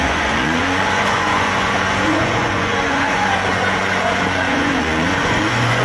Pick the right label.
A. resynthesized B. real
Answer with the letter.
A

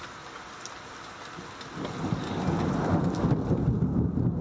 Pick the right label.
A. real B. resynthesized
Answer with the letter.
A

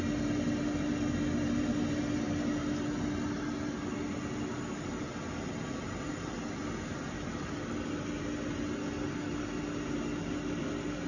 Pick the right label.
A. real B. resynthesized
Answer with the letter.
A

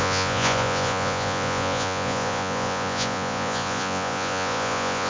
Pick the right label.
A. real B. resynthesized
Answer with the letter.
B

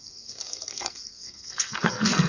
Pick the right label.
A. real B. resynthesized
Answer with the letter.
B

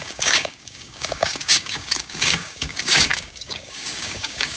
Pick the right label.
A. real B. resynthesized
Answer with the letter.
B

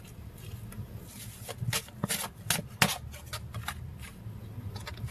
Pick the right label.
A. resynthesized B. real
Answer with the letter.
B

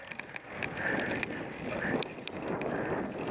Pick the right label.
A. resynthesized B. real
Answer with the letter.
B